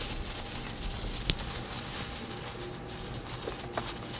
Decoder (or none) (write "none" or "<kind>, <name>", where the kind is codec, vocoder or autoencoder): none